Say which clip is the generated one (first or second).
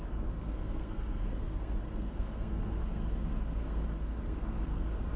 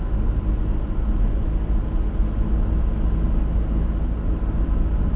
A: first